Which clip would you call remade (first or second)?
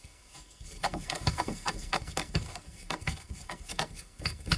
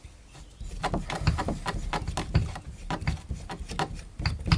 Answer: first